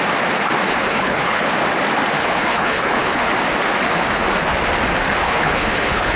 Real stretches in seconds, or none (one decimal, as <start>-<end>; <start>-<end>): 0.0-0.7; 1.5-2.2; 3.3-5.2